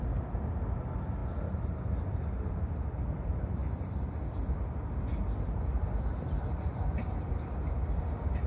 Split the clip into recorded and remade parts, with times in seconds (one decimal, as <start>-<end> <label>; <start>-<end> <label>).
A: 0.0-8.5 recorded